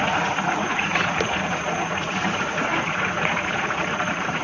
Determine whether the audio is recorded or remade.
remade